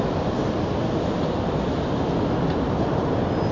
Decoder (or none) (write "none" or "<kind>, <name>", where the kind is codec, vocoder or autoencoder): none